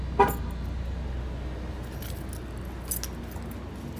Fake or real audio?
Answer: real